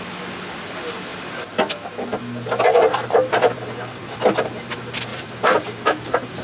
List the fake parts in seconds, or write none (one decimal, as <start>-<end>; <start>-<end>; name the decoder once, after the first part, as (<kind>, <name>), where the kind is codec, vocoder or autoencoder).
none